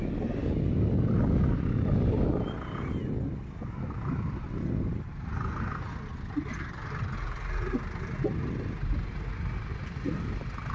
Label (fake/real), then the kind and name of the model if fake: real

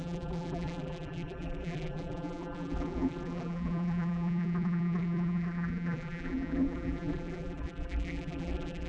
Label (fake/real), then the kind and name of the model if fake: fake, vocoder, BigVGAN v2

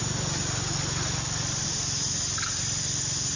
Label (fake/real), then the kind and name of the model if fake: real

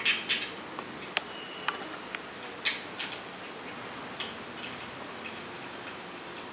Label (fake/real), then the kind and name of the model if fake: real